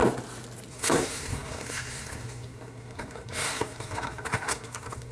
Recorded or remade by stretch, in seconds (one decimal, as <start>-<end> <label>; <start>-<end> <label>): 0.0-0.7 recorded; 0.7-5.1 remade